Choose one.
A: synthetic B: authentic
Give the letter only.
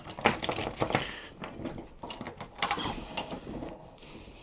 B